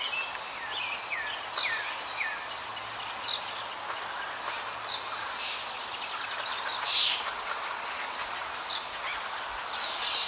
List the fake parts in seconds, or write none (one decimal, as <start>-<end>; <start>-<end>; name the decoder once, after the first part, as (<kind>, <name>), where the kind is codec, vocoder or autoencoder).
none